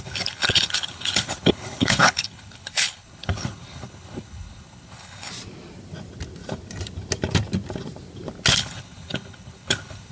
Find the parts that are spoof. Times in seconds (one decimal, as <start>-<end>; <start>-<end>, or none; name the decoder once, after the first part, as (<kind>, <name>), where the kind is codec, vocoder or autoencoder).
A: 0.0-5.3 (codec, HILCodec); 8.5-10.1